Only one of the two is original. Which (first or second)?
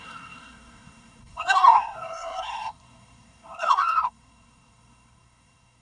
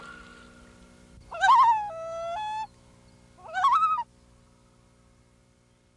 second